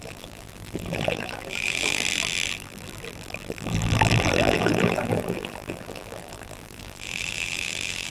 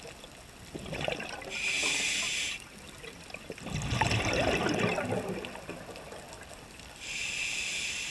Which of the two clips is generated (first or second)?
first